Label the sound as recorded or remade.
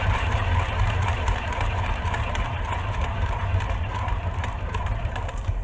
remade